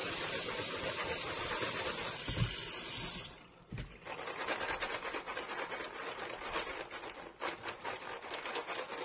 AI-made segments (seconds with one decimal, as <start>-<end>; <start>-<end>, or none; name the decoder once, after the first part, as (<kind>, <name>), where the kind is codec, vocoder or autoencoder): 0.0-1.5 (vocoder, BigVGAN v2)